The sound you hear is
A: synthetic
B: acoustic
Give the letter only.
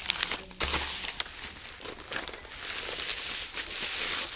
B